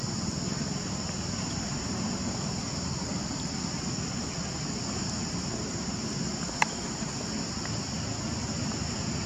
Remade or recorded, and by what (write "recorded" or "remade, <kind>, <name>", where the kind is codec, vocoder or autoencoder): recorded